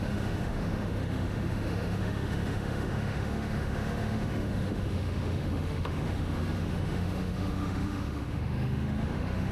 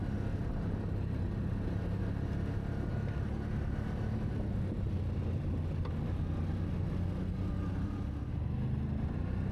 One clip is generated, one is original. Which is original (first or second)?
second